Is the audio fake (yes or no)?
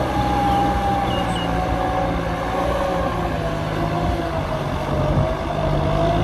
no